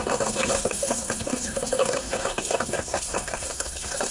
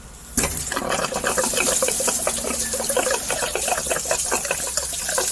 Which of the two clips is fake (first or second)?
first